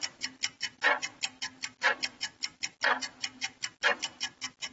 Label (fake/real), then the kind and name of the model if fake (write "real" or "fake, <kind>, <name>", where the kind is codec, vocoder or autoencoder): real